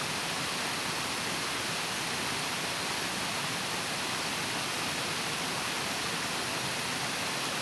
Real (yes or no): yes